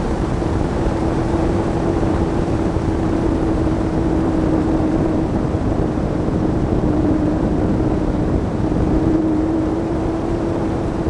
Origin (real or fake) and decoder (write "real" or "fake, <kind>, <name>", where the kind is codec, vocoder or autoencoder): fake, vocoder, BigVGAN v2